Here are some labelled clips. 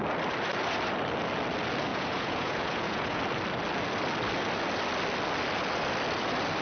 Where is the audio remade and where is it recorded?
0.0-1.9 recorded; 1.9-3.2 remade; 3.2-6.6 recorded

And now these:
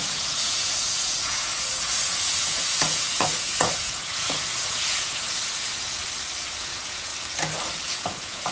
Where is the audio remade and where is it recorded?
0.0-6.0 remade; 6.0-6.6 recorded; 6.6-7.1 remade; 7.1-7.9 recorded; 7.9-8.5 remade

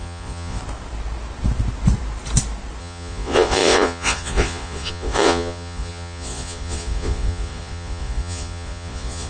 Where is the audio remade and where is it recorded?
0.0-0.6 remade; 0.6-2.8 recorded; 2.8-9.3 remade

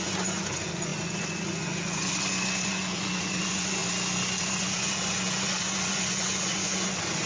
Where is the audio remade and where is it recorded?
0.0-3.8 remade; 3.8-4.4 recorded; 4.4-7.3 remade

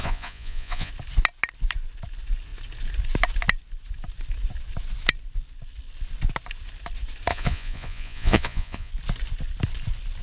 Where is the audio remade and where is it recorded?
0.0-0.9 remade; 0.9-7.3 recorded; 7.3-8.9 remade; 8.9-10.2 recorded